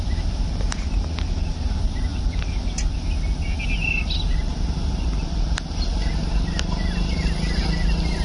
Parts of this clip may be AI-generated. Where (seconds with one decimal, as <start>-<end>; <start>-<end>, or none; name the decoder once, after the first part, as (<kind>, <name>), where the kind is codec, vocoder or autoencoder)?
none